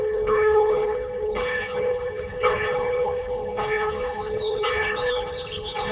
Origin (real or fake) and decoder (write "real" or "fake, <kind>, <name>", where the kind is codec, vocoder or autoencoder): fake, codec, HILCodec